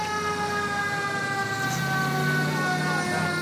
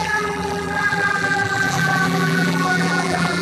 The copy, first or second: second